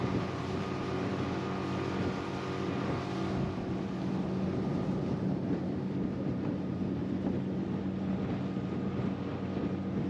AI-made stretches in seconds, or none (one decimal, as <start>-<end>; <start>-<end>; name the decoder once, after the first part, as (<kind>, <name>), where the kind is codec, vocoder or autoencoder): 0.0-1.1 (vocoder, BigVGAN v2); 4.7-7.1